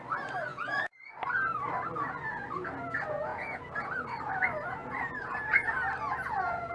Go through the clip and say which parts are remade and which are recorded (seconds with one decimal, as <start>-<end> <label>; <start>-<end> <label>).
0.0-0.5 recorded; 0.5-1.1 remade; 1.1-3.3 recorded; 3.3-3.9 remade; 3.9-4.8 recorded; 4.8-5.7 remade; 5.7-6.7 recorded